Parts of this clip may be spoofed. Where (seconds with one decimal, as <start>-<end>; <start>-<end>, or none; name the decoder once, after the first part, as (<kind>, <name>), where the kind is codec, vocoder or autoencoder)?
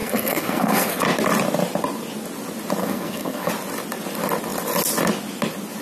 0.0-1.0 (codec, SNAC); 2.8-3.5